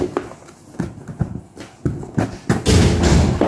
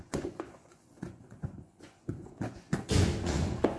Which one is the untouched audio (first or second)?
first